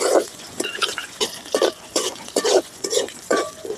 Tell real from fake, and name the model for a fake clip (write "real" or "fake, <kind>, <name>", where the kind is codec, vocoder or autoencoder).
fake, vocoder, Vocos